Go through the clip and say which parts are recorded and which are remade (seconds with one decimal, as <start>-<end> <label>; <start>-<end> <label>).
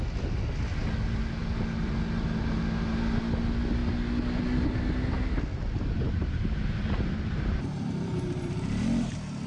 0.0-5.6 recorded; 5.6-9.1 remade; 9.1-9.5 recorded